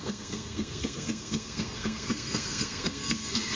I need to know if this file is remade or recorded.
remade